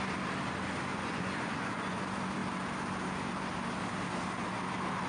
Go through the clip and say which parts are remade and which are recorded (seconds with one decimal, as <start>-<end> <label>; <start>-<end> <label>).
0.0-0.9 recorded; 0.9-2.0 remade; 2.0-5.1 recorded